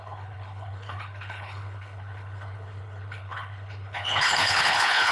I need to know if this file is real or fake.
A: fake